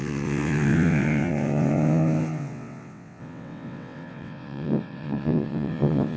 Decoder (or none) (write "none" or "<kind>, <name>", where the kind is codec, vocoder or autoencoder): vocoder, WaveNeXt